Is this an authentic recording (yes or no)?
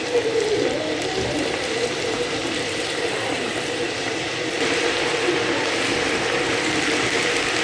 no